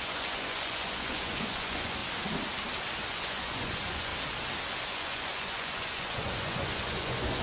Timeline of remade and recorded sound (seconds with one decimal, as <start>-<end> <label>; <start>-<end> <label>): 0.0-2.0 remade; 2.0-3.1 recorded; 3.1-4.1 remade; 4.1-4.8 recorded; 4.8-7.4 remade